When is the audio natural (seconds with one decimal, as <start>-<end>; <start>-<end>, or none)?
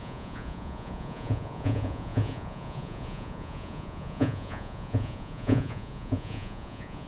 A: none